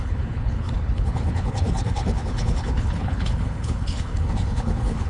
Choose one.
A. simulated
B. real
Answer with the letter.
A